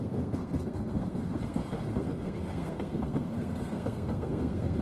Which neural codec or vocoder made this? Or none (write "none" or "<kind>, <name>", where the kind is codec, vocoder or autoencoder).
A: codec, SNAC